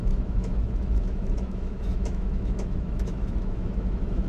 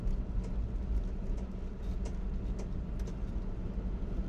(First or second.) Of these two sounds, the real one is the second